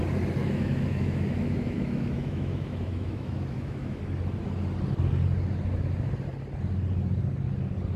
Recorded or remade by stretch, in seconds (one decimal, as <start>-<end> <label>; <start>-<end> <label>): 0.0-0.4 recorded; 0.4-4.0 remade; 4.0-8.0 recorded